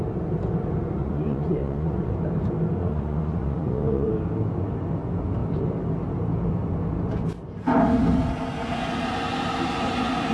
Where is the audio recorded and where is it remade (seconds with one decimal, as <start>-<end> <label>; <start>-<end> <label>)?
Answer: 0.0-1.0 recorded; 1.0-2.1 remade; 2.1-2.8 recorded; 2.8-4.1 remade; 4.1-10.3 recorded